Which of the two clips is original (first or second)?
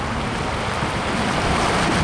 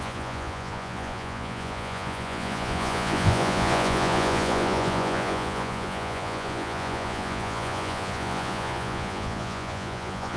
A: first